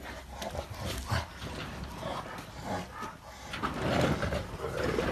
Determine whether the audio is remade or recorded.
recorded